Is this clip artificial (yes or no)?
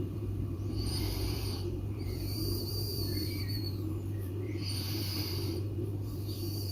yes